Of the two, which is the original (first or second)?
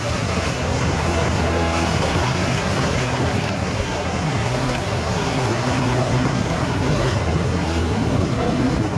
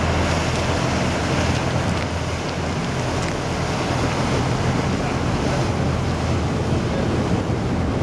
second